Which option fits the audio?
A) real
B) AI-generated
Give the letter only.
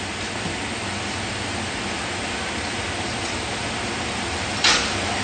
A